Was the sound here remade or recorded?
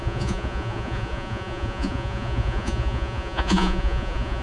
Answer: remade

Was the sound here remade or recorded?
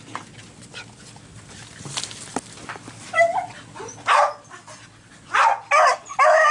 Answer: recorded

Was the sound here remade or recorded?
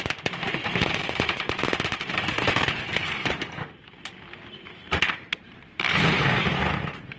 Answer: remade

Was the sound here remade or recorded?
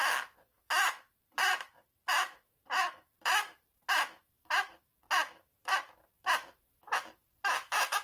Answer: remade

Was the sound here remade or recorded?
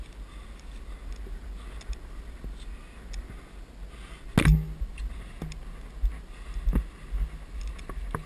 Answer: recorded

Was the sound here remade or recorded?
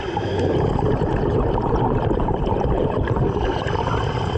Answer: remade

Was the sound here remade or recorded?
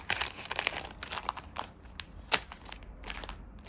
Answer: recorded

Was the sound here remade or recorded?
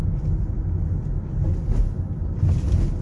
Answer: recorded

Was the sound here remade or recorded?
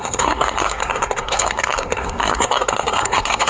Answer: remade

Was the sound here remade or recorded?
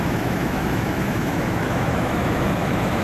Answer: remade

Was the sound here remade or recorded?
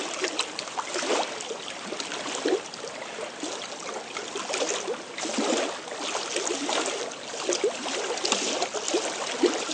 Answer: recorded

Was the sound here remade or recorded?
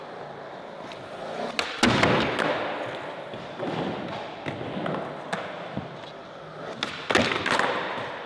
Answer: recorded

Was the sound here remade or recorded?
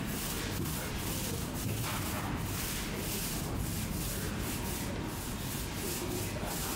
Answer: recorded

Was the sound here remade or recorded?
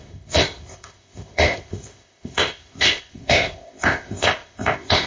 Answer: remade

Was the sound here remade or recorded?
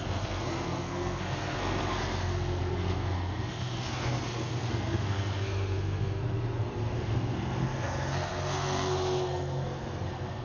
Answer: remade